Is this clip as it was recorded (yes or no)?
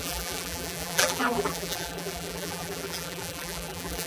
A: no